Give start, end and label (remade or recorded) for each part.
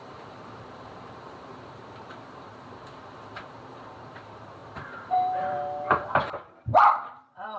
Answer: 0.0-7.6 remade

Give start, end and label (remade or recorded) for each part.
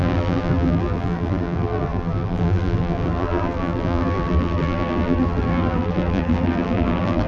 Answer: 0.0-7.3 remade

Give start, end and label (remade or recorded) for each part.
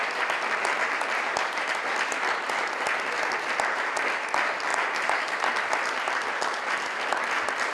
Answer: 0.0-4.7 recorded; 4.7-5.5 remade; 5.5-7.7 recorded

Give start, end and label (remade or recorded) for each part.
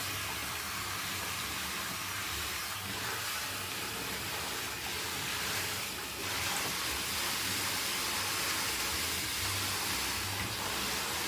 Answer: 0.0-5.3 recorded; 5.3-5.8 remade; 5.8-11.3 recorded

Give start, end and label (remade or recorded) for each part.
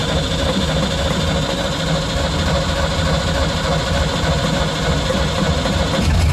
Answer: 0.0-6.3 recorded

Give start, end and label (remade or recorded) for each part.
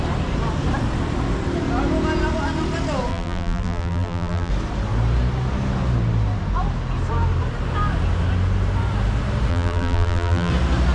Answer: 0.0-3.1 recorded; 3.1-4.5 remade; 4.5-9.5 recorded; 9.5-10.5 remade; 10.5-10.9 recorded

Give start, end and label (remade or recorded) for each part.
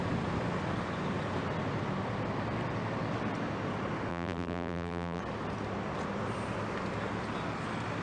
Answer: 0.0-4.1 recorded; 4.1-5.2 remade; 5.2-8.0 recorded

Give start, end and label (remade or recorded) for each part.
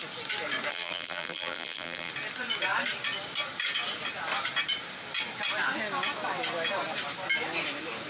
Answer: 0.0-0.7 recorded; 0.7-2.1 remade; 2.1-8.1 recorded